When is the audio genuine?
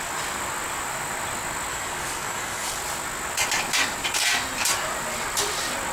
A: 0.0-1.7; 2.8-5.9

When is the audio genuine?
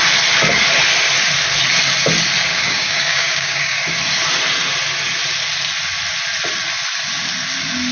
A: 0.0-2.5; 3.8-7.9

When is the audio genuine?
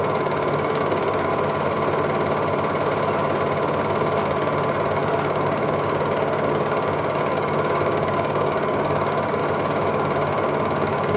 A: 1.3-4.2; 9.4-9.9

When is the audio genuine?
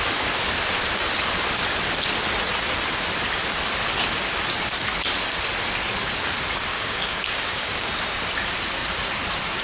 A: 0.0-6.7; 7.9-9.6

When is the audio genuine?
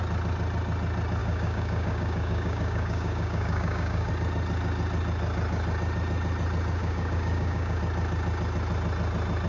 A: 0.0-1.2; 4.1-6.8; 7.8-9.5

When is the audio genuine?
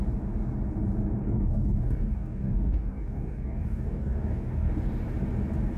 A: 0.0-1.2; 4.7-5.8